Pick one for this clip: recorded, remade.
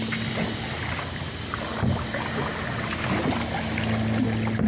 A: recorded